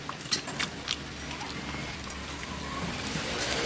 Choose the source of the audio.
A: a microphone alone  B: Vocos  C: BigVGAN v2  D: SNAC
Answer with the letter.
A